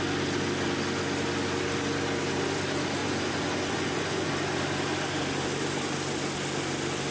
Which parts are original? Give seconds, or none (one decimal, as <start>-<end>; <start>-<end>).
0.0-3.0; 4.3-7.1